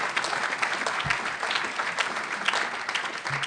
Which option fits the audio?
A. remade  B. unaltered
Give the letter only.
B